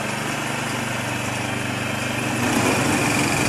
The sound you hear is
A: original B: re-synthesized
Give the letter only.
A